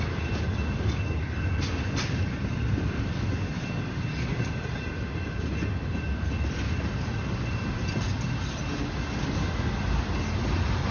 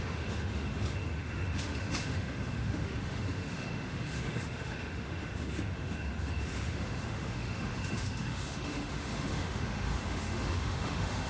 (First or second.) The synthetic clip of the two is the second